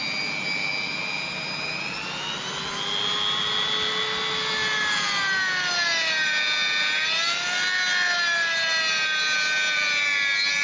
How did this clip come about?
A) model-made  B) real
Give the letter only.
B